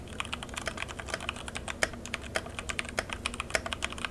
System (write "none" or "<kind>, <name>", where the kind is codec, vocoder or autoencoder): none